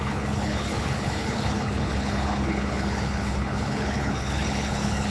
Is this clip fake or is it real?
fake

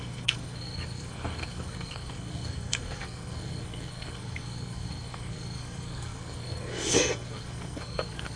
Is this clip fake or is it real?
fake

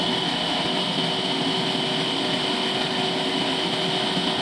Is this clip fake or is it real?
real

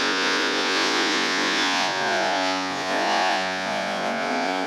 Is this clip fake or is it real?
fake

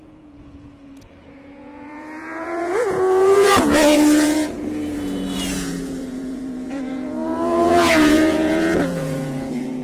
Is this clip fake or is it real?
fake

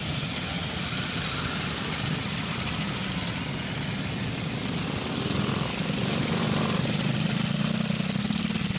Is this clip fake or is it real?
real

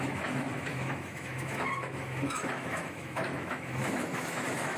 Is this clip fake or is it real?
fake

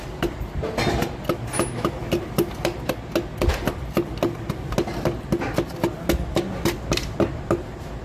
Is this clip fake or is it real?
real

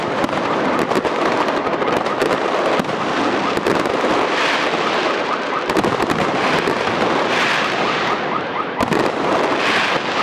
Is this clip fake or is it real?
real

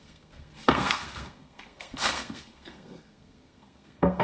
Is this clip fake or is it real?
fake